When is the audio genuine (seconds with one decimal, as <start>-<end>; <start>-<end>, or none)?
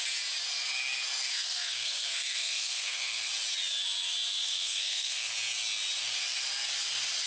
0.0-1.3; 3.3-4.4; 5.3-7.3